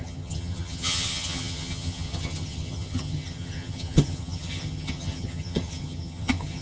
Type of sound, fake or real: fake